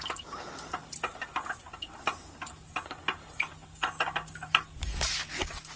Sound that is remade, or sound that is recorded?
recorded